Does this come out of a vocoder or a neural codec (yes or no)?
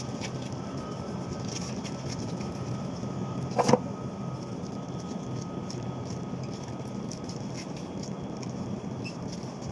no